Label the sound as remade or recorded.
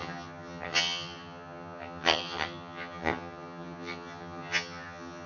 remade